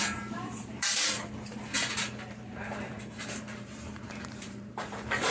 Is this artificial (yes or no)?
yes